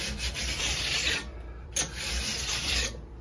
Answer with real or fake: fake